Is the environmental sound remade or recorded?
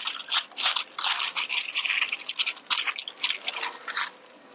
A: recorded